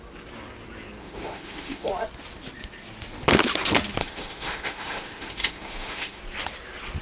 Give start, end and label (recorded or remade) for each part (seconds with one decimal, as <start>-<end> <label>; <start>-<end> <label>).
0.0-1.0 recorded; 1.0-1.9 remade; 1.9-4.0 recorded; 4.0-6.2 remade; 6.2-7.0 recorded